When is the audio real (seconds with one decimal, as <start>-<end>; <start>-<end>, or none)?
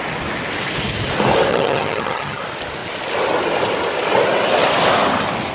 0.0-1.5; 2.4-5.5